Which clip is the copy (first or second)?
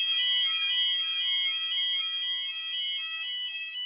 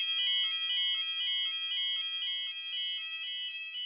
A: first